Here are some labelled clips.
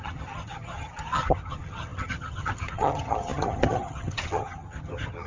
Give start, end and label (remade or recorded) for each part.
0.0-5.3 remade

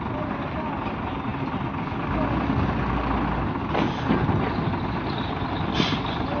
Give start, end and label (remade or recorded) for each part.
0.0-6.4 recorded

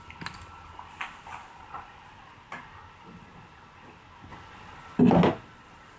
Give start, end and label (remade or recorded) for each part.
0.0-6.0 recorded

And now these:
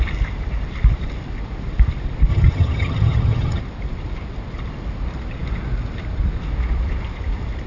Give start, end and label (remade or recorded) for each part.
0.0-2.3 recorded; 2.3-3.6 remade; 3.6-7.7 recorded